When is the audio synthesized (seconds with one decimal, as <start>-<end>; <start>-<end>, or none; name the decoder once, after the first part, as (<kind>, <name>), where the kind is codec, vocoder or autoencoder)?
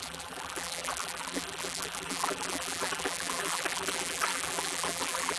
0.0-5.4 (vocoder, BigVGAN v2)